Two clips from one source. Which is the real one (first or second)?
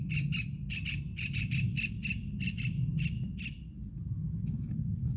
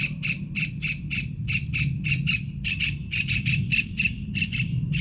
first